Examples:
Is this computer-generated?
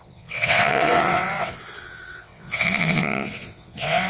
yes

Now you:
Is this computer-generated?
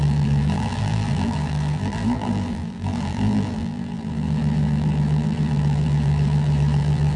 yes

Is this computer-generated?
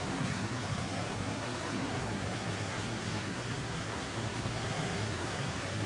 yes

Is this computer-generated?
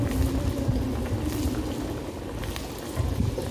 no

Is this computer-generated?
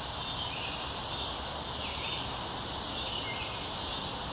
no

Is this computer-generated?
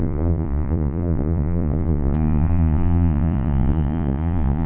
yes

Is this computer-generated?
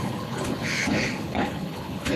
yes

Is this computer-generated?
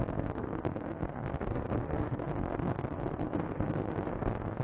yes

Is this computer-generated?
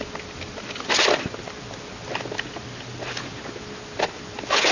no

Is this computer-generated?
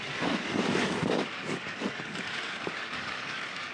yes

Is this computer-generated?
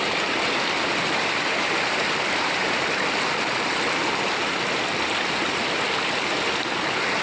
no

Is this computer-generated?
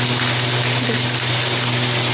no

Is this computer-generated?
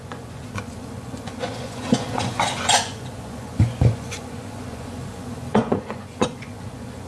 yes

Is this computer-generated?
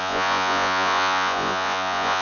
yes